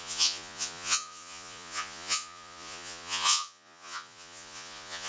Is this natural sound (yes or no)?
no